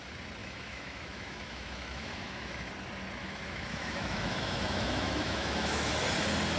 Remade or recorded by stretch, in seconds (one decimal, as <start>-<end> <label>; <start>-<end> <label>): 0.0-0.4 recorded; 0.4-2.7 remade; 2.7-3.2 recorded; 3.2-5.9 remade; 5.9-6.6 recorded